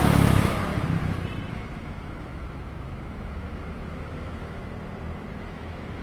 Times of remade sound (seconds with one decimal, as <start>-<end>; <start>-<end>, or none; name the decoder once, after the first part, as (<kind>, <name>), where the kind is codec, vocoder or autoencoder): 0.0-0.7 (autoencoder, DAC-VAE); 1.5-4.6; 5.4-6.0